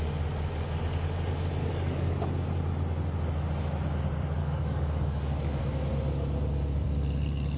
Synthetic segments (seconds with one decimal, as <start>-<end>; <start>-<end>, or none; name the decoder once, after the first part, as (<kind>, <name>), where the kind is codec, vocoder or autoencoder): 1.6-2.2 (codec, DAC); 4.4-5.6

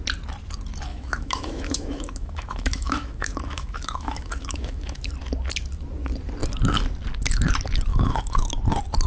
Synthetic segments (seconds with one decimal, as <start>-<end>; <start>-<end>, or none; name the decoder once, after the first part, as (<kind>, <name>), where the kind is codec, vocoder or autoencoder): 0.9-5.1 (autoencoder, DAC-VAE); 7.9-8.5

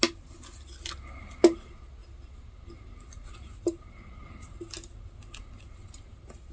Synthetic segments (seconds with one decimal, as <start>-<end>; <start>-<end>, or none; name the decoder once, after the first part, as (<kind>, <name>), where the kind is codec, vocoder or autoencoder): none

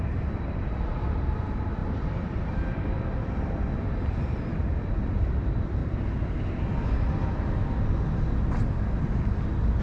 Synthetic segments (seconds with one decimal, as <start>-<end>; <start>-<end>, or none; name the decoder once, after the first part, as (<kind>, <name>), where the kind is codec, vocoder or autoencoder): 0.0-5.8 (vocoder, BigVGAN v2)

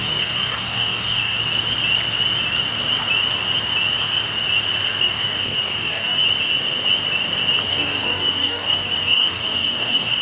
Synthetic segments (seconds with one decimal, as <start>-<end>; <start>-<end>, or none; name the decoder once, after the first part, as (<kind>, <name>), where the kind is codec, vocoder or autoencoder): 0.0-1.4 (codec, DAC); 5.0-6.2; 7.7-10.2

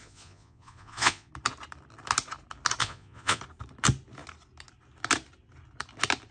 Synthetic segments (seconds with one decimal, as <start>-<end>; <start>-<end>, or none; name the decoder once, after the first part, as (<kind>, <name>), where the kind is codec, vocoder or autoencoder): 0.0-1.3 (vocoder, Vocos); 2.8-3.4

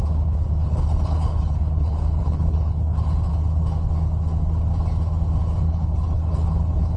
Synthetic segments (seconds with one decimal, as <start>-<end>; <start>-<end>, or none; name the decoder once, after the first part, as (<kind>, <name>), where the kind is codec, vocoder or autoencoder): 0.0-3.3 (codec, HILCodec); 5.6-7.0

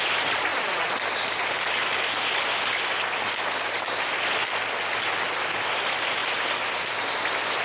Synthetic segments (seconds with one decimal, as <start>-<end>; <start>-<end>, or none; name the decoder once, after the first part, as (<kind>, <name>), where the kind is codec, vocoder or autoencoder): none